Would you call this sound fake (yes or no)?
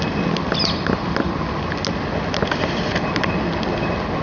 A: no